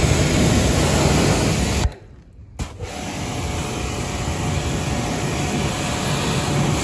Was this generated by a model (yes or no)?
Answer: no